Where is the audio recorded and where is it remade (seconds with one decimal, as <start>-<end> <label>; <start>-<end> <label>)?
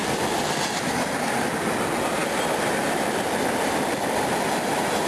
0.0-5.1 recorded